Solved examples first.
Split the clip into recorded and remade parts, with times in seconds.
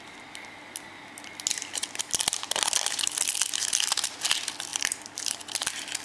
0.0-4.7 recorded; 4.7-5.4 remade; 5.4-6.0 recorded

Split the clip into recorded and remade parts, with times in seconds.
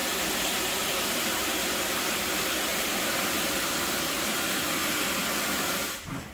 0.0-2.7 recorded; 2.7-3.7 remade; 3.7-6.3 recorded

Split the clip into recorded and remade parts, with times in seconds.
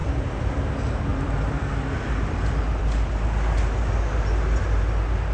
0.0-0.7 remade; 0.7-1.1 recorded; 1.1-2.8 remade; 2.8-5.3 recorded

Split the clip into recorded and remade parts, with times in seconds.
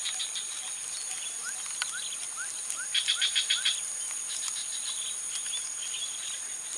0.0-2.6 remade; 2.6-6.8 recorded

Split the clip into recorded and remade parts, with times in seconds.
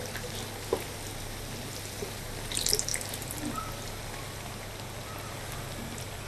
0.0-6.3 recorded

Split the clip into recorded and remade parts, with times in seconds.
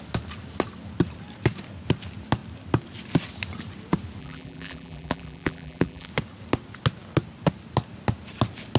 0.0-4.2 recorded; 4.2-6.1 remade; 6.1-8.8 recorded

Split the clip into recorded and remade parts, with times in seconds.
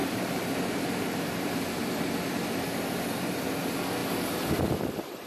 0.0-1.6 remade; 1.6-5.3 recorded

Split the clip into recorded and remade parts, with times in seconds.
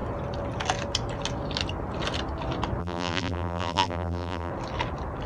0.0-2.8 recorded; 2.8-4.5 remade; 4.5-5.3 recorded